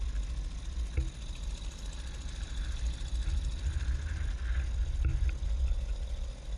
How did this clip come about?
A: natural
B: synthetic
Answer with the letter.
A